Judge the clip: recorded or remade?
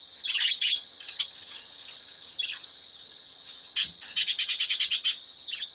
remade